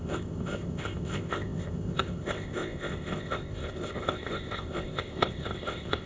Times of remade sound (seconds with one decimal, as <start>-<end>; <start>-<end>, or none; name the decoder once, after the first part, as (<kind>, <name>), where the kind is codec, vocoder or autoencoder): 0.0-6.1 (codec, ZipCodec)